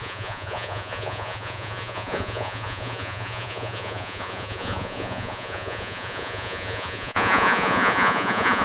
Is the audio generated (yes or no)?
yes